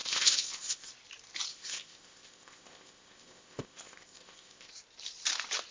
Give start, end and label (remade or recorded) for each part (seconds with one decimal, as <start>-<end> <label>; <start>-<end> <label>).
0.0-0.9 remade; 0.9-1.5 recorded; 1.5-4.7 remade; 4.7-5.7 recorded